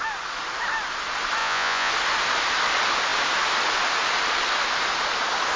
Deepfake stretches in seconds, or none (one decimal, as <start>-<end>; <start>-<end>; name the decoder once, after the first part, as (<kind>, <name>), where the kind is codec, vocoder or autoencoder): 1.4-1.9 (vocoder, Vocos)